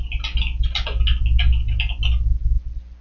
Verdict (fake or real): real